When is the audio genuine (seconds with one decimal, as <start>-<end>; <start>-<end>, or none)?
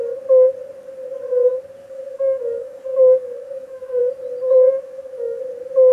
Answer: 0.0-1.8; 4.0-4.8; 5.4-5.9